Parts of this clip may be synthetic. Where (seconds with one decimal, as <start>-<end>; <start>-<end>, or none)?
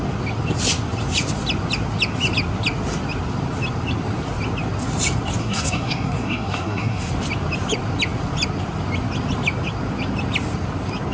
5.4-7.1